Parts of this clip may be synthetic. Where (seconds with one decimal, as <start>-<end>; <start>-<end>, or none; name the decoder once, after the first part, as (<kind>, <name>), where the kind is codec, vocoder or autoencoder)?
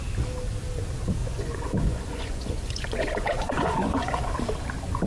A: 1.2-4.3 (vocoder, Vocos)